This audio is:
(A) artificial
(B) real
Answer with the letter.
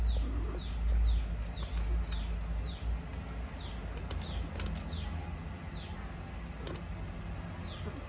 B